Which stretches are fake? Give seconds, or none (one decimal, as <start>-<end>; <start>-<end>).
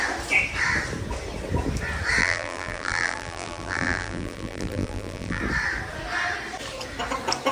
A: 2.2-5.4